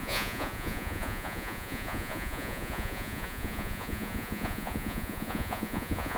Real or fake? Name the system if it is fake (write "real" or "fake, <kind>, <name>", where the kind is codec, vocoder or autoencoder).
fake, vocoder, Vocos